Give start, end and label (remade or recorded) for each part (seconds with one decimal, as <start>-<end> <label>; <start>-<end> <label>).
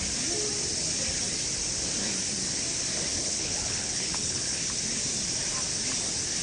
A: 0.0-3.1 recorded; 3.1-4.7 remade; 4.7-6.4 recorded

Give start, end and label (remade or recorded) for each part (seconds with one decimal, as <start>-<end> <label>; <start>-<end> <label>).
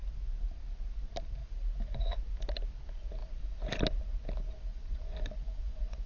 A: 0.0-4.7 recorded; 4.7-6.1 remade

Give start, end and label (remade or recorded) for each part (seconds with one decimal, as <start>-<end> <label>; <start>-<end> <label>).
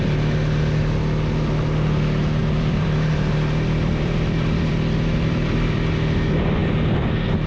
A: 0.0-2.4 recorded; 2.4-5.9 remade; 5.9-6.6 recorded; 6.6-7.1 remade; 7.1-7.5 recorded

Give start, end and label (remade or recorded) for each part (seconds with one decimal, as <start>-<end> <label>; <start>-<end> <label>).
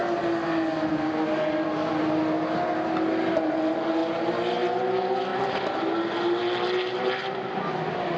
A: 0.0-8.2 recorded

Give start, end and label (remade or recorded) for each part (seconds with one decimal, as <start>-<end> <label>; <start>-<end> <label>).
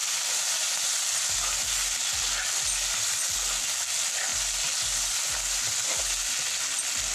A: 0.0-7.1 recorded